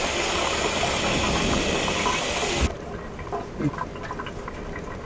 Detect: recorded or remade recorded